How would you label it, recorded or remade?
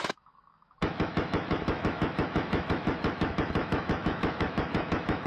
remade